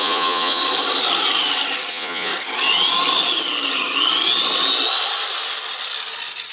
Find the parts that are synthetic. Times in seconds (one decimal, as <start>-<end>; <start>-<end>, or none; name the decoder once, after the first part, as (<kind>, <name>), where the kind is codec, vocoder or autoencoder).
0.0-0.6 (vocoder, Vocos); 1.9-2.3